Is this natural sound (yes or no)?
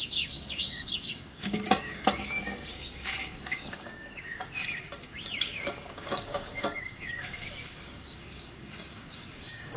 no